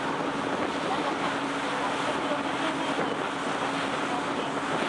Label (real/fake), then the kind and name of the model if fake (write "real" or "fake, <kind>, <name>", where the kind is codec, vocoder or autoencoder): real